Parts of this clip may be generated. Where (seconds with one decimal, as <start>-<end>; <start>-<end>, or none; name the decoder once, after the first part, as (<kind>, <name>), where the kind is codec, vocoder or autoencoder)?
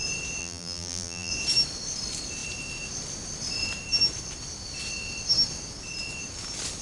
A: 0.4-1.3 (vocoder, BigVGAN v2)